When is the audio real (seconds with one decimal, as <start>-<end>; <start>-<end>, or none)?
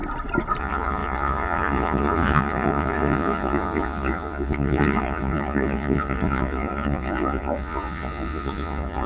0.0-0.6